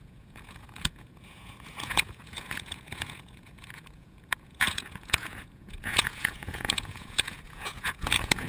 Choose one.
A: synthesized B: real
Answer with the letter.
A